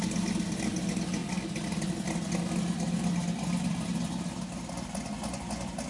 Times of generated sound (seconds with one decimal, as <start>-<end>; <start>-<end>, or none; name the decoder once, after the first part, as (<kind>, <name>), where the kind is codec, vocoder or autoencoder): none